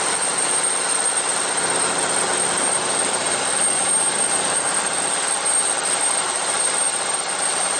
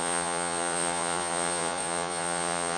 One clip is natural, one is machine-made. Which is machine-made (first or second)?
second